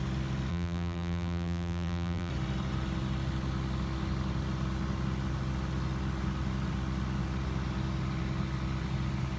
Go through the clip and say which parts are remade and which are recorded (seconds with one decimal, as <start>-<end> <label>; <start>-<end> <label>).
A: 0.0-0.5 recorded; 0.5-2.3 remade; 2.3-9.4 recorded